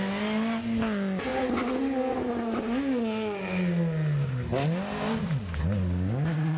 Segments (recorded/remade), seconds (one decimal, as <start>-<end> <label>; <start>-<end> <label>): 0.0-6.6 recorded